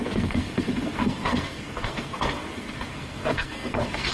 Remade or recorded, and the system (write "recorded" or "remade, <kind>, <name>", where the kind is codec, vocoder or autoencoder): remade, codec, SNAC